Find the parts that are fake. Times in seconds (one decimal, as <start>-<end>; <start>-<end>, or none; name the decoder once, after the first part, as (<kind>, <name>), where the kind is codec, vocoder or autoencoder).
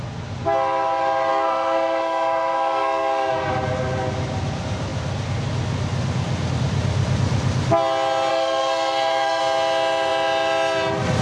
1.3-3.3 (codec, SNAC); 8.3-9.4